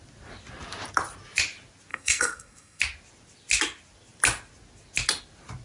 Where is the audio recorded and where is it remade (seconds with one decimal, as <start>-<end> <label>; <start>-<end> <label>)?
0.0-1.9 recorded; 1.9-2.8 remade; 2.8-5.6 recorded